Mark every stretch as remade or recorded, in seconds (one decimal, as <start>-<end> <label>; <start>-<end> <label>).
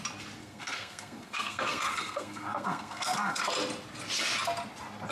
0.0-0.4 recorded; 0.4-3.5 remade; 3.5-5.1 recorded